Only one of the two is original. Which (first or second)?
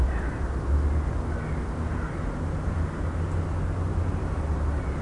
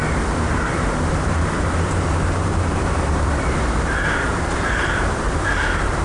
first